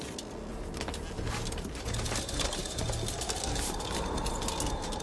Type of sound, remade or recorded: recorded